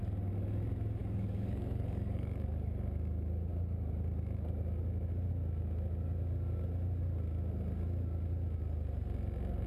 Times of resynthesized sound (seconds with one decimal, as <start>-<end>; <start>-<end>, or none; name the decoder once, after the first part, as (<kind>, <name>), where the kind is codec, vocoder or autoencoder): 1.0-2.7 (codec, DAC)